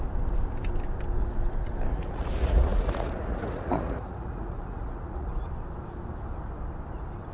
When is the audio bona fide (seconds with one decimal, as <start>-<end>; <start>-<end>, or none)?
0.0-1.9; 5.5-7.3